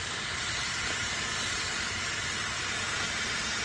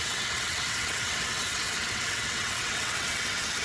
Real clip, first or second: first